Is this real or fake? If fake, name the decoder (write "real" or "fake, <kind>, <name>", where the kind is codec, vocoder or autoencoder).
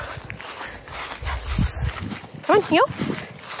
real